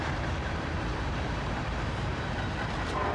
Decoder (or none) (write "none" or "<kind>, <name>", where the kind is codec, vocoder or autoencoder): vocoder, BigVGAN v2